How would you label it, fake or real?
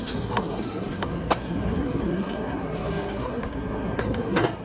fake